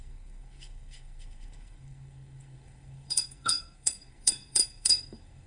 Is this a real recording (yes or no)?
no